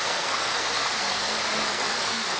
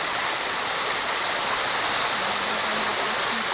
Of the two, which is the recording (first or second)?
second